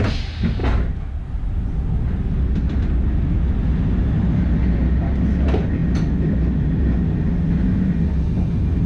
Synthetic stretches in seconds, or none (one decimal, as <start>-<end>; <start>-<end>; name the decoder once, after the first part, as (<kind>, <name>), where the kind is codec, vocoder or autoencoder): none